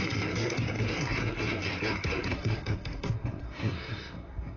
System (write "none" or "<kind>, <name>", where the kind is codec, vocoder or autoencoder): codec, SNAC